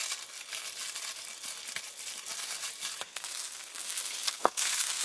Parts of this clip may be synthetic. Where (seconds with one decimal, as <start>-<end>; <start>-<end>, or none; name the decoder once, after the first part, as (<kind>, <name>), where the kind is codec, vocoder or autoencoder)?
3.0-5.0 (codec, SNAC)